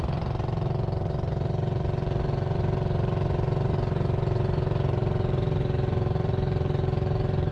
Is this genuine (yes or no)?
no